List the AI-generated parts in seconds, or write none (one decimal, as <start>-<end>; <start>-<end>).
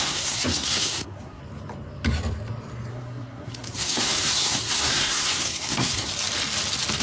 0.0-1.4; 2.9-6.1